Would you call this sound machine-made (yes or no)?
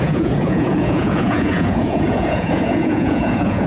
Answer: yes